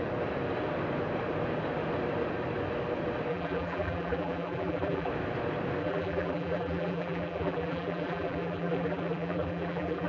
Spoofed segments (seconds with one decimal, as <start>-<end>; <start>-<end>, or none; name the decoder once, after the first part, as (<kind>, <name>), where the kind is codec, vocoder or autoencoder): 3.3-5.1 (vocoder, BigVGAN v2); 5.8-10.1